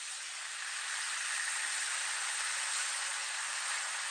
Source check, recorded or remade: recorded